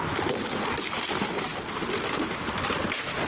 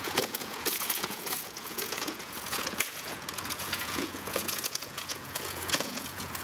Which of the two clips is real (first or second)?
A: first